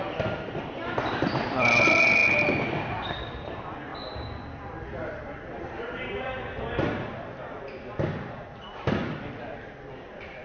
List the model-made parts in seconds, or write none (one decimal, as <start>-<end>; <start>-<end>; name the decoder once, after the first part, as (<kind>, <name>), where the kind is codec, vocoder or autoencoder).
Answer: 0.0-2.2 (vocoder, BigVGAN v2); 2.7-10.4